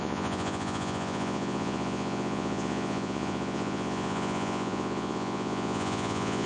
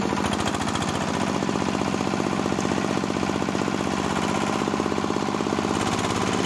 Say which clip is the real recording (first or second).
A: second